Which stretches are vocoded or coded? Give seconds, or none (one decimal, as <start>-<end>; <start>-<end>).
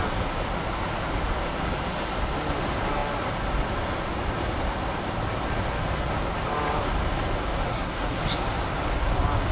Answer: 7.7-8.2